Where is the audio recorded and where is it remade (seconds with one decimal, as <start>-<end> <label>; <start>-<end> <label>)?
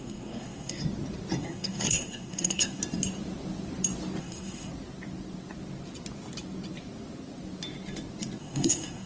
0.0-0.8 remade; 0.8-1.4 recorded; 1.4-2.8 remade; 2.8-4.2 recorded; 4.2-4.7 remade; 4.7-8.4 recorded; 8.4-9.1 remade